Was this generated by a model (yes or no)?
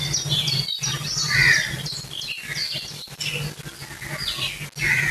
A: no